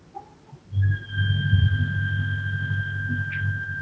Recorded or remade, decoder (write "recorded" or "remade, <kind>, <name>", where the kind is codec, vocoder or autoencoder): recorded